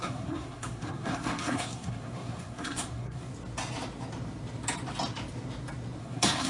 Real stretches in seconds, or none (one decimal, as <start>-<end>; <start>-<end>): 3.3-6.0